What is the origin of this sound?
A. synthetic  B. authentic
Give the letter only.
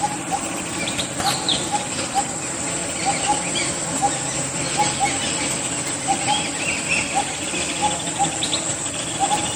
B